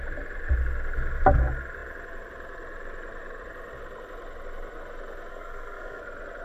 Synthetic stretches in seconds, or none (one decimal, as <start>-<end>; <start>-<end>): 5.3-6.0